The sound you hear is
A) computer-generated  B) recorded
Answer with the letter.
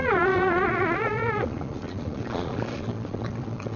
A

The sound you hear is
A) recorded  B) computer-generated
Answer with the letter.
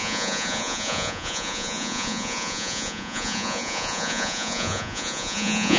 B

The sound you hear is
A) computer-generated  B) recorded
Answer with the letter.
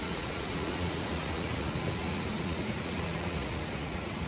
A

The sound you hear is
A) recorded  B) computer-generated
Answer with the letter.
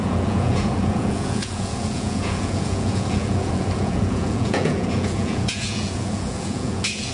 B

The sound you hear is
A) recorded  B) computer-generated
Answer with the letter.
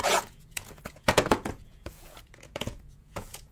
B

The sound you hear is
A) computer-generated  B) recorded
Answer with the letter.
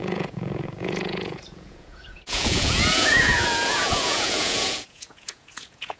A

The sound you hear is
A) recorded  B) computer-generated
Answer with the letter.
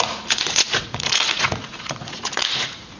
B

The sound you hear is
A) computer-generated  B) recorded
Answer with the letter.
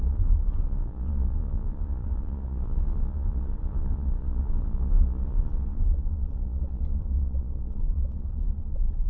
A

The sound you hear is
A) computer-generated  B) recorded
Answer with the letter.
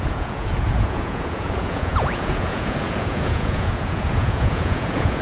A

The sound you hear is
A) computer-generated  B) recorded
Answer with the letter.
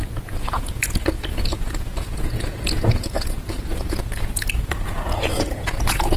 A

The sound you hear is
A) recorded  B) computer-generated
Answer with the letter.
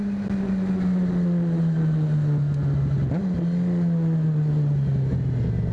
A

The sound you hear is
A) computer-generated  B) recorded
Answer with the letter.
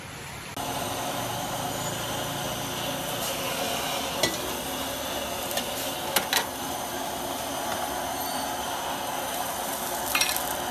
B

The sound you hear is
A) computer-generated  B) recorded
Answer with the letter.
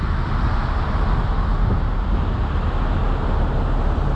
B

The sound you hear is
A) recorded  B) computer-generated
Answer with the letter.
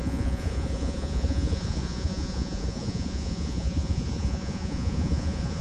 B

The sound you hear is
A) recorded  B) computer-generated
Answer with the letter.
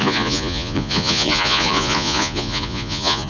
B